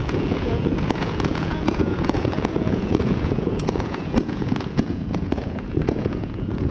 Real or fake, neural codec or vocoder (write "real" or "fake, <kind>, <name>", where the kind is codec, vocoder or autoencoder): fake, vocoder, Vocos